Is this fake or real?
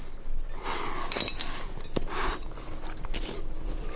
real